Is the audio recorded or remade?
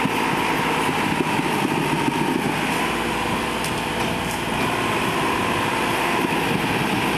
recorded